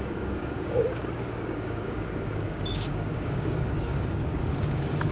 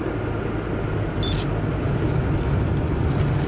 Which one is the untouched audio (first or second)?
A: second